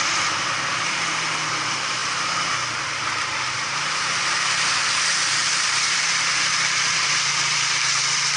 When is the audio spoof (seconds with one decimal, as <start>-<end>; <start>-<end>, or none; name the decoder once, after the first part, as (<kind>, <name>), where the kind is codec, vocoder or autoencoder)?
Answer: 0.0-2.0 (vocoder, BigVGAN v2); 4.8-8.4